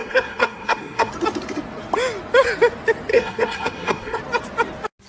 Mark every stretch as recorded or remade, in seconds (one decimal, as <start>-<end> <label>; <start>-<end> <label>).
0.0-1.1 remade; 1.1-3.1 recorded; 3.1-4.2 remade; 4.2-5.1 recorded